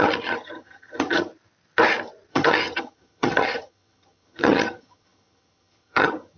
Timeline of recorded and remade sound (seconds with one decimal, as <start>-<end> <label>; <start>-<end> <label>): 0.0-1.3 remade; 1.3-2.3 recorded; 2.3-6.4 remade